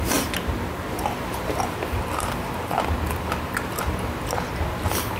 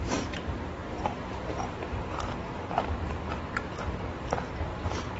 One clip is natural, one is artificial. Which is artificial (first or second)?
second